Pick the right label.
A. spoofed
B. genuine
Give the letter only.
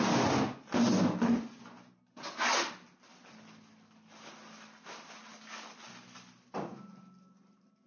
B